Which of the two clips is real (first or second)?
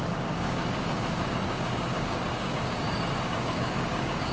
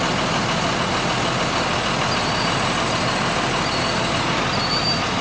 second